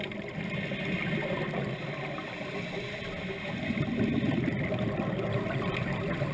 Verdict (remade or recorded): recorded